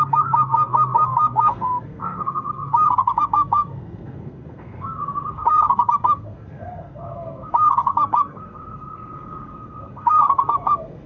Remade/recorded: remade